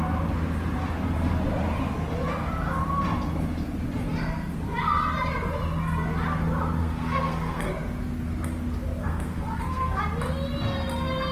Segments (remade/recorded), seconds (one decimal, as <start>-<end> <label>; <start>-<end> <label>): 0.0-6.8 recorded; 6.8-7.7 remade; 7.7-9.0 recorded; 9.0-10.0 remade; 10.0-11.3 recorded